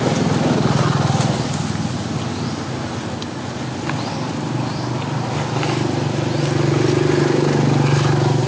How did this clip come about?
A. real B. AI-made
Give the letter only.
A